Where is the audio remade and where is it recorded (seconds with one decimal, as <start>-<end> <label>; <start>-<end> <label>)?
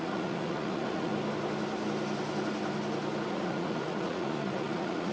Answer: 0.0-1.1 remade; 1.1-3.3 recorded; 3.3-5.1 remade